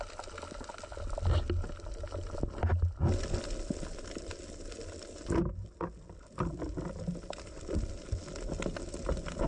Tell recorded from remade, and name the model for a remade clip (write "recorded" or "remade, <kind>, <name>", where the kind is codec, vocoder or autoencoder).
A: recorded